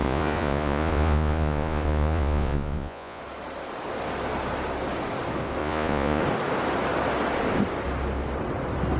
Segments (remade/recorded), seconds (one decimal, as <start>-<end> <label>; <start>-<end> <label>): 0.0-3.2 remade; 3.2-5.6 recorded; 5.6-6.2 remade; 6.2-9.0 recorded